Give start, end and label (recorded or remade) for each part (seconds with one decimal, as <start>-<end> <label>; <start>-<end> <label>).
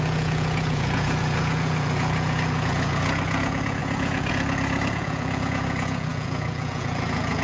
0.0-7.4 remade